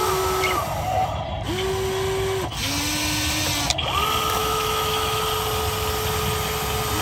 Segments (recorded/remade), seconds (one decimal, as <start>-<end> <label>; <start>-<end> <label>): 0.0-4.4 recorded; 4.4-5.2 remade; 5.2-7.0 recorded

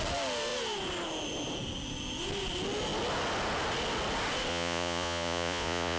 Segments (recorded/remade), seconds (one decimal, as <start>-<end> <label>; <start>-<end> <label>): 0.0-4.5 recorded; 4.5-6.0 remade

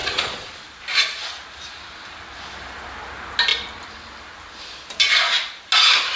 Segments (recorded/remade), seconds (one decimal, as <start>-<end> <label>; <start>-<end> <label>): 0.0-0.5 remade; 0.5-6.2 recorded

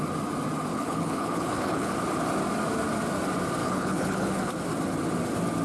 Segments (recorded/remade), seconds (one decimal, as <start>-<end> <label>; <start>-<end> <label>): 0.0-0.7 recorded; 0.7-1.9 remade; 1.9-3.6 recorded; 3.6-4.5 remade; 4.5-5.6 recorded